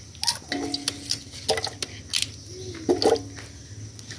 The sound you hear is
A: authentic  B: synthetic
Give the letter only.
A